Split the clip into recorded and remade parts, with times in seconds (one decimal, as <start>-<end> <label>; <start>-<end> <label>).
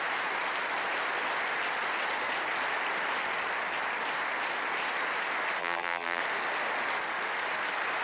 0.0-5.6 recorded; 5.6-6.2 remade; 6.2-8.0 recorded